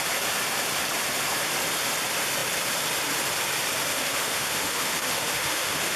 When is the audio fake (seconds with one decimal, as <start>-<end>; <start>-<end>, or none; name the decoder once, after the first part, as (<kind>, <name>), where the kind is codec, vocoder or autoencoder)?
3.9-6.0 (autoencoder, DAC-VAE)